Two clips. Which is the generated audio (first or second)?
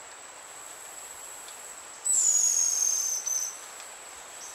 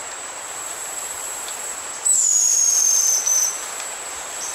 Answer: second